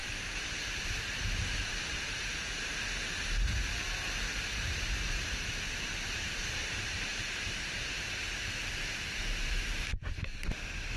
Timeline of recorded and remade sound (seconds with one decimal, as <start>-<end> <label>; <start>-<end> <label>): 0.0-1.2 remade; 1.2-1.6 recorded; 1.6-2.3 remade; 2.3-4.5 recorded; 4.5-8.0 remade; 8.0-8.6 recorded; 8.6-10.5 remade; 10.5-11.0 recorded